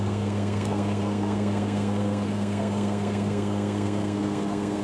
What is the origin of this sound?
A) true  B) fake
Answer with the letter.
B